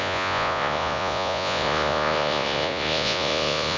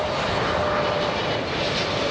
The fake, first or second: first